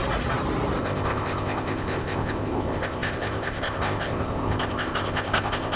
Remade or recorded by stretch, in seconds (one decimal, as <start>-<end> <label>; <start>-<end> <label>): 0.0-0.8 recorded; 0.8-5.8 remade